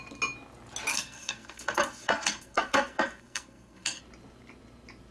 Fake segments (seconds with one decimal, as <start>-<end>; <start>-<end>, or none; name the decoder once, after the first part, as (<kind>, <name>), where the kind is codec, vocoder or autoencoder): 0.9-4.0 (codec, SNAC)